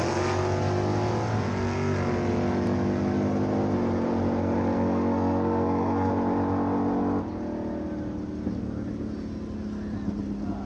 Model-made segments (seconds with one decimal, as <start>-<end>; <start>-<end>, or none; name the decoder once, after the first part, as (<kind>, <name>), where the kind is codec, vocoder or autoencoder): 4.4-6.1 (codec, SNAC)